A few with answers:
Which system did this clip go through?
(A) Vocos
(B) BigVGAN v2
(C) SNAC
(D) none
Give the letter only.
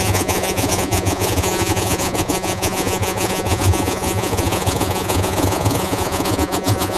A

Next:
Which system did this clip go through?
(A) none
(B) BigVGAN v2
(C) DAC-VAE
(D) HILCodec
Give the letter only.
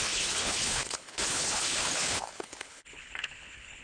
D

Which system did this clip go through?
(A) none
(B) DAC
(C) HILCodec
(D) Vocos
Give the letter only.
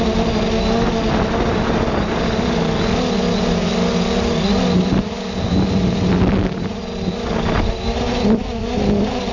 A